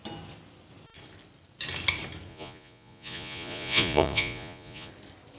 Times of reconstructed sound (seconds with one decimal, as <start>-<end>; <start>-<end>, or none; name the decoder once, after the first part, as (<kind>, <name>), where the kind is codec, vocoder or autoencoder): 2.3-4.9 (vocoder, Vocos)